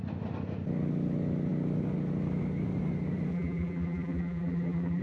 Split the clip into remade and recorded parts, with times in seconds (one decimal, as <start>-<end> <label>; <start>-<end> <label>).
0.0-3.3 recorded; 3.3-5.0 remade